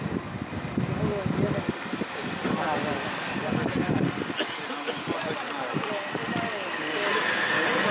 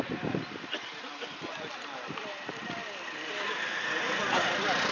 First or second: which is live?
first